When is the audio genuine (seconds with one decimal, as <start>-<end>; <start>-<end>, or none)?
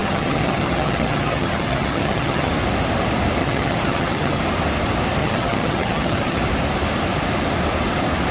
2.5-3.4; 4.4-5.2; 6.4-8.3